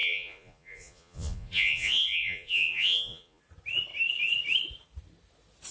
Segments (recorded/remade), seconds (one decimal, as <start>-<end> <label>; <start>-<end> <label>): 0.0-3.4 remade; 3.4-5.7 recorded